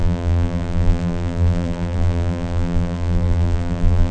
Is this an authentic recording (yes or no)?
no